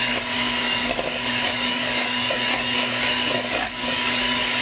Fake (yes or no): yes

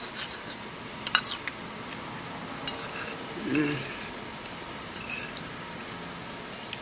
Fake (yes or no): no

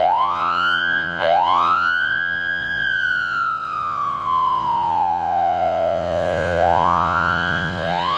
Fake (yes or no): yes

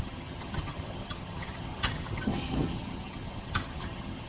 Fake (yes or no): yes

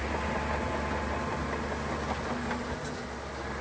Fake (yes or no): no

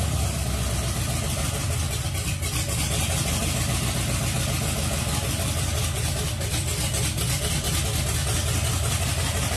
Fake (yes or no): no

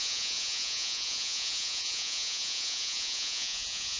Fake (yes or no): yes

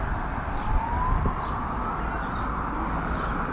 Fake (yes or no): no